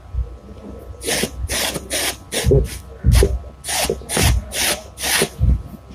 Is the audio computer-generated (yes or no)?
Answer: no